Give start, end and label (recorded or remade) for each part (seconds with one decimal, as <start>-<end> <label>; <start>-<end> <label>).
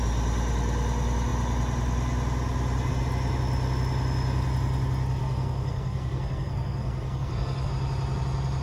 0.0-5.2 recorded; 5.2-7.7 remade; 7.7-8.6 recorded